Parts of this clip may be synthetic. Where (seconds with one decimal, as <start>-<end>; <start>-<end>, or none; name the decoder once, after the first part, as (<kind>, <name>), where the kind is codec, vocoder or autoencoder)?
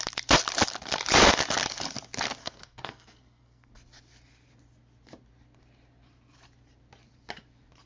2.4-3.7 (codec, SNAC)